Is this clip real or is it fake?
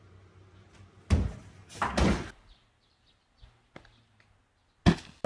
real